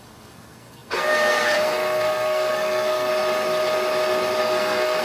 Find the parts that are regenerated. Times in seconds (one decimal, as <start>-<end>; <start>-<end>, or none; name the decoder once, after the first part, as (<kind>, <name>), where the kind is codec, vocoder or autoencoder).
0.0-3.1 (codec, SNAC); 4.4-5.0